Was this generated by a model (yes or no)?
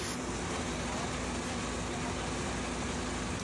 no